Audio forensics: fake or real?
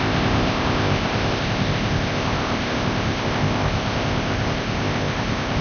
fake